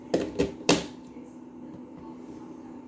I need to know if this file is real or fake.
real